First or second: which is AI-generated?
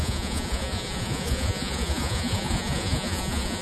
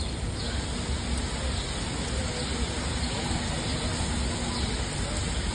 first